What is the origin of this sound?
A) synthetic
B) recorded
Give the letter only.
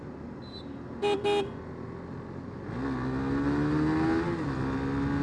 B